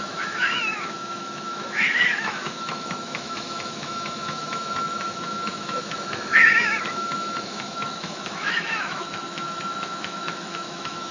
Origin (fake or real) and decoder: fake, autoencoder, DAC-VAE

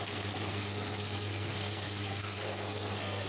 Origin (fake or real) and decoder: fake, codec, SNAC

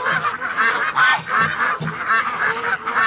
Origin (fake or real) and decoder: real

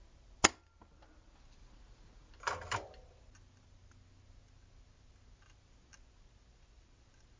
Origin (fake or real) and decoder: real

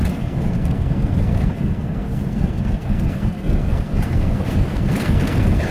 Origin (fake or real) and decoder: fake, codec, SNAC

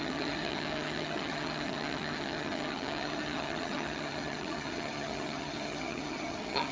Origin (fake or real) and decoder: fake, vocoder, HiFi-GAN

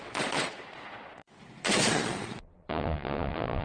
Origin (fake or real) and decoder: fake, vocoder, Vocos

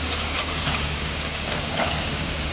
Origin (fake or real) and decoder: fake, codec, DAC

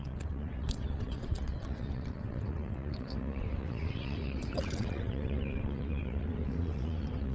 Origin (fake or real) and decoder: fake, vocoder, WaveNeXt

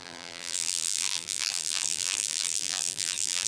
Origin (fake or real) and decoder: fake, vocoder, BigVGAN v2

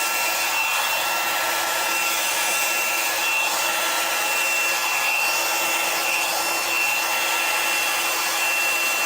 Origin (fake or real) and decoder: real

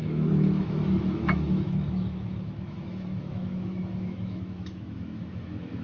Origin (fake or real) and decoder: fake, autoencoder, DAC-VAE